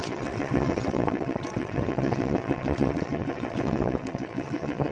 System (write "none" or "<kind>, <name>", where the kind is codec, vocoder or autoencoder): vocoder, WaveNeXt